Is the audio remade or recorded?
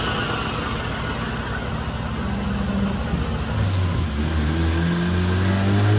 recorded